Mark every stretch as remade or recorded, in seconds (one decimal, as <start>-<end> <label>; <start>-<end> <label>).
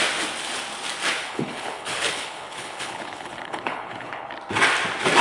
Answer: 0.0-1.2 recorded; 1.2-4.3 remade; 4.3-5.2 recorded